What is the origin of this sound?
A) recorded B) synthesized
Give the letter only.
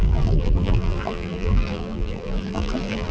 B